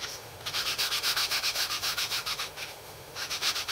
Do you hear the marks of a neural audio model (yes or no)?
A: yes